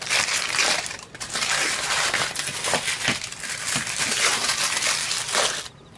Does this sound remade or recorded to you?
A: recorded